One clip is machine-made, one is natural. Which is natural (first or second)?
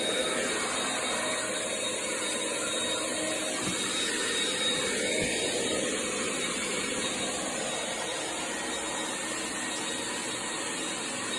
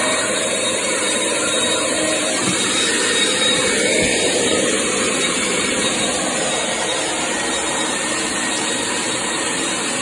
first